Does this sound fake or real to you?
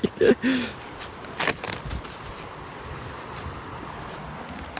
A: real